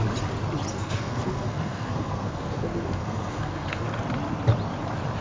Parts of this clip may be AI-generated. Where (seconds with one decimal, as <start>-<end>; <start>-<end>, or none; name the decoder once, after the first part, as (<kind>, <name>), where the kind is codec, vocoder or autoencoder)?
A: 0.7-3.8 (codec, SNAC)